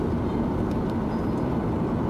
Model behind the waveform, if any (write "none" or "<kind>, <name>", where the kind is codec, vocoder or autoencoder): vocoder, BigVGAN v2